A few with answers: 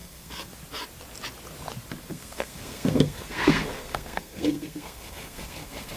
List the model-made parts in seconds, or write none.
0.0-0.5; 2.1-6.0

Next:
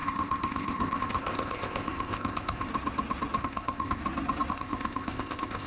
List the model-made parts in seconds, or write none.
0.0-2.7; 3.4-4.0; 4.5-5.7

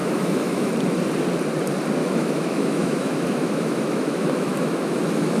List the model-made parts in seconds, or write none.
0.0-0.7; 2.0-5.4

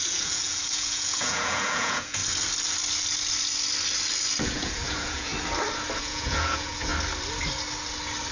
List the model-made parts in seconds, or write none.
0.0-2.2; 4.4-5.3; 6.0-6.9

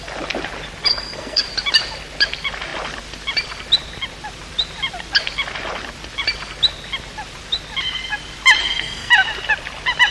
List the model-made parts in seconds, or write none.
0.9-1.4; 8.6-9.1

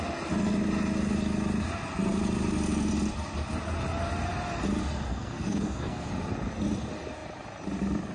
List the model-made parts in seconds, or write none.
5.1-6.1